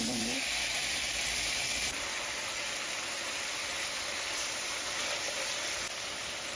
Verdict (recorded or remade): remade